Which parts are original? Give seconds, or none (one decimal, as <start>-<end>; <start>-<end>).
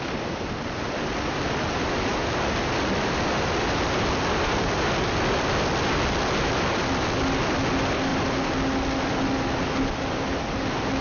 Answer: 0.0-11.0